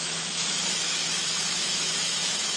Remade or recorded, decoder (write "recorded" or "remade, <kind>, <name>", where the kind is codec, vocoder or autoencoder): remade, autoencoder, DAC-VAE